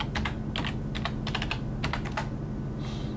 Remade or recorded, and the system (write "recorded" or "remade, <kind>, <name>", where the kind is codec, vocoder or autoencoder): recorded